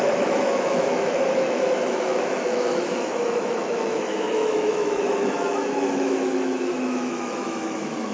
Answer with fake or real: fake